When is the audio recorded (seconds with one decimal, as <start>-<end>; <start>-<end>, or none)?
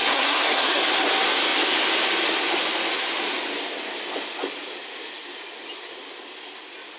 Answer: 0.8-7.0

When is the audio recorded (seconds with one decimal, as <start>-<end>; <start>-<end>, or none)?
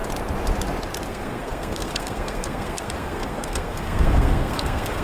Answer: 0.0-1.1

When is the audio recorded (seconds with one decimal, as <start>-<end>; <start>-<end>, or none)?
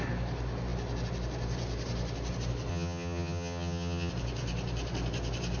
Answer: 0.0-2.7; 4.1-5.6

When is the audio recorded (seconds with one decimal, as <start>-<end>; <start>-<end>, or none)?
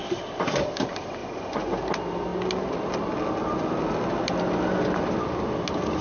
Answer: 0.0-1.2; 1.8-6.0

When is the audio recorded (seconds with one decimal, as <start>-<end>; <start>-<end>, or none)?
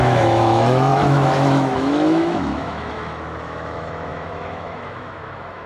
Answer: none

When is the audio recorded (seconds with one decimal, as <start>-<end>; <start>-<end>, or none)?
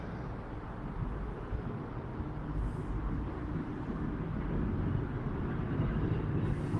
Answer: 0.0-6.8